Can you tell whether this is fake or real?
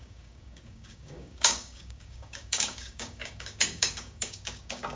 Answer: fake